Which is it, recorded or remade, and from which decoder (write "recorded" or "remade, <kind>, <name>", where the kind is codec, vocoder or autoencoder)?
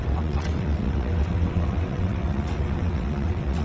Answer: remade, vocoder, WaveNeXt